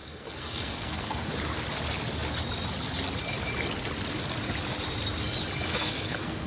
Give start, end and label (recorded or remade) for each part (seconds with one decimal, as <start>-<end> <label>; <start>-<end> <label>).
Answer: 0.0-1.3 remade; 1.3-5.7 recorded; 5.7-6.5 remade